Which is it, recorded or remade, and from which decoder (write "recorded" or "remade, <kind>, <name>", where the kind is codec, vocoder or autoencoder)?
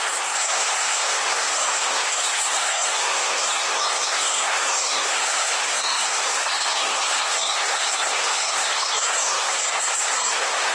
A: remade, codec, SNAC